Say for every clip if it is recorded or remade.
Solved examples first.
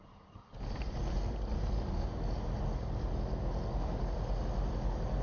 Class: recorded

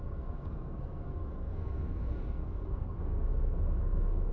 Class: remade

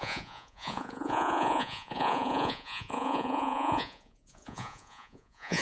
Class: remade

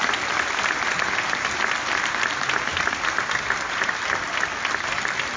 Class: recorded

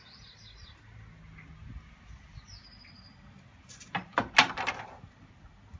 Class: recorded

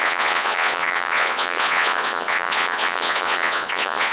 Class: remade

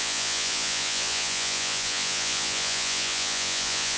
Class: remade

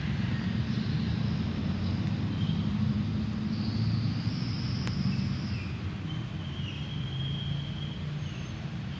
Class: recorded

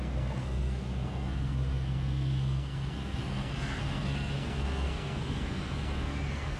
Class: remade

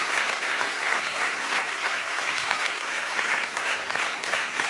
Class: remade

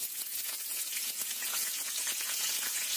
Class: remade